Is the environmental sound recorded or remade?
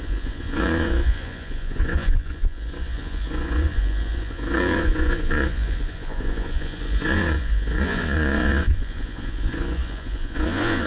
remade